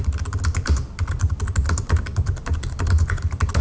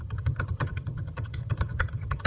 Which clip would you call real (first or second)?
first